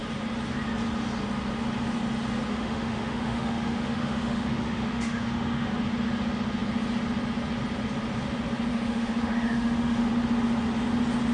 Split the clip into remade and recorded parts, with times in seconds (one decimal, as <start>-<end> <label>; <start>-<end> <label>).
0.0-2.5 recorded; 2.5-5.7 remade; 5.7-8.7 recorded; 8.7-10.1 remade; 10.1-11.3 recorded

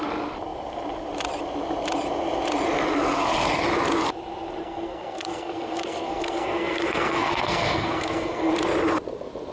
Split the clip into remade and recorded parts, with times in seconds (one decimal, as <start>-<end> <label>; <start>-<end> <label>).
0.0-4.6 recorded; 4.6-8.5 remade; 8.5-9.5 recorded

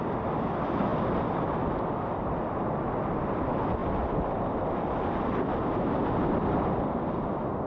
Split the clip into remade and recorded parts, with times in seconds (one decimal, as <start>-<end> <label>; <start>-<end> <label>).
0.0-3.8 recorded; 3.8-5.3 remade; 5.3-7.7 recorded

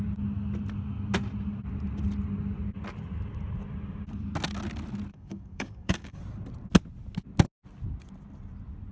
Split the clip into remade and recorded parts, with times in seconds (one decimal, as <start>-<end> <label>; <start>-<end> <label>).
0.0-5.1 recorded; 5.1-6.2 remade; 6.2-8.9 recorded

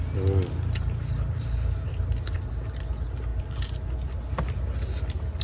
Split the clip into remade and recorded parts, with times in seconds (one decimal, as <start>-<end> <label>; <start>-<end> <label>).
0.0-5.4 recorded

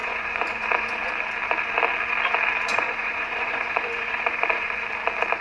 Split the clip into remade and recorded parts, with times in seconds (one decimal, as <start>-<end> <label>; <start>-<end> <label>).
0.0-1.1 remade; 1.1-2.7 recorded; 2.7-4.8 remade; 4.8-5.4 recorded